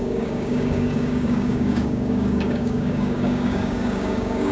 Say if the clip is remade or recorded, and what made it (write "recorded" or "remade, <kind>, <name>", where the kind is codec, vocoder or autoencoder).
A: remade, codec, DAC